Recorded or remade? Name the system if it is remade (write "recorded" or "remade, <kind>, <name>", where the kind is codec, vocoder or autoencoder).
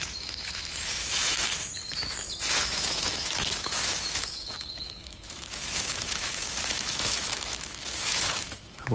remade, autoencoder, DAC-VAE